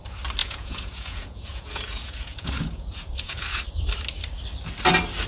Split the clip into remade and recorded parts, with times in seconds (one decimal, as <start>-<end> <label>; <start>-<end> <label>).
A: 0.0-0.4 recorded; 0.4-3.6 remade; 3.6-5.3 recorded